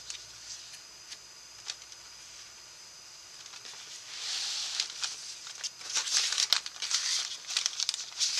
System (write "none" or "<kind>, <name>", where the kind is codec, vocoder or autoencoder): none